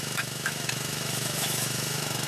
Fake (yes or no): yes